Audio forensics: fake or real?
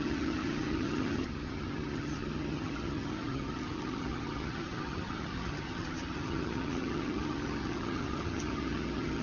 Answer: fake